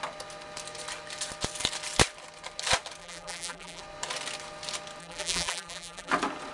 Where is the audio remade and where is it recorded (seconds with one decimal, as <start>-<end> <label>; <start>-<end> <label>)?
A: 0.0-3.0 recorded; 3.0-3.8 remade; 3.8-5.0 recorded; 5.0-6.1 remade; 6.1-6.5 recorded